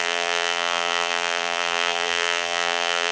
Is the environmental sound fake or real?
fake